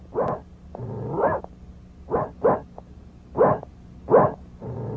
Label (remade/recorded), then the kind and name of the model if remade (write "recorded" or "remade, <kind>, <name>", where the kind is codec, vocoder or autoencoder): recorded